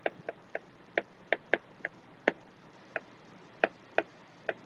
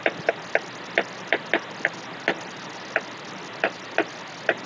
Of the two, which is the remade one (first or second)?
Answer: first